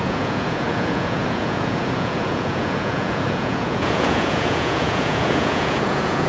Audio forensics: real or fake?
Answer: fake